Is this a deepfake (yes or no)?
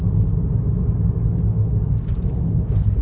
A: no